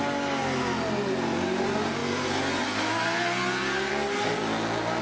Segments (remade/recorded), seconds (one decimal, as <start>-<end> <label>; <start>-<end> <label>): 0.0-5.0 recorded